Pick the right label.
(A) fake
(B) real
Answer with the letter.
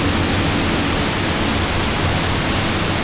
B